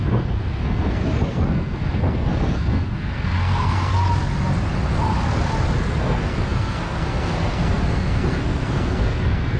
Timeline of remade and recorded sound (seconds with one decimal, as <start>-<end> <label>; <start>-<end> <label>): 0.0-3.9 remade; 3.9-6.0 recorded; 6.0-9.6 remade